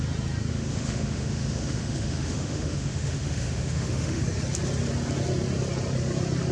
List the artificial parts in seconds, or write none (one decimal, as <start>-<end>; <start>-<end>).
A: 0.5-4.2